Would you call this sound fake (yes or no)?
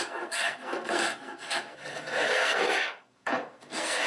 yes